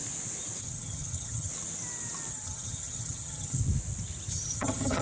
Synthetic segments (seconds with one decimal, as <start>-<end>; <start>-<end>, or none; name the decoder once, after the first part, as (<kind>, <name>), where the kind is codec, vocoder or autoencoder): 0.6-1.5 (vocoder, HiFi-GAN); 2.3-3.6; 4.3-5.0